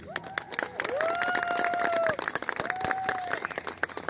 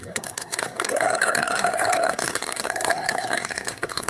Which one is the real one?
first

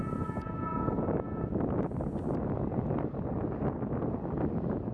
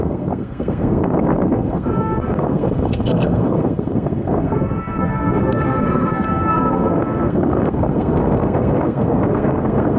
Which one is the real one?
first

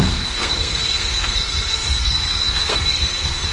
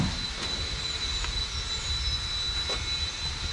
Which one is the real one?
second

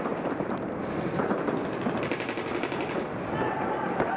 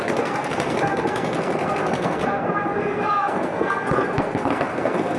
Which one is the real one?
first